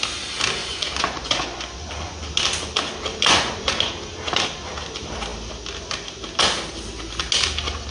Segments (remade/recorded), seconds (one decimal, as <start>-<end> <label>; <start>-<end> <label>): 0.0-0.6 recorded; 0.6-2.3 remade; 2.3-3.1 recorded; 3.1-3.9 remade; 3.9-7.9 recorded